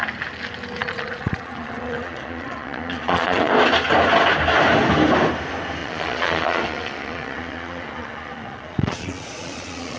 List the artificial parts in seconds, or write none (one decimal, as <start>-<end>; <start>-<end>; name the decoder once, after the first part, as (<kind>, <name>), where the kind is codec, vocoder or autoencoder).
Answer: 0.8-3.5 (vocoder, Vocos); 5.8-10.0